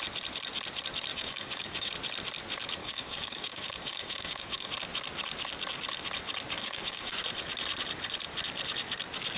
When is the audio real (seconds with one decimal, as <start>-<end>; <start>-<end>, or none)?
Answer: 0.0-1.1; 1.9-2.8; 4.7-6.6; 7.1-9.4